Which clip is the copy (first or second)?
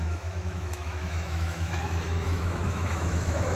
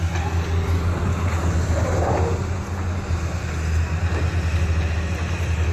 first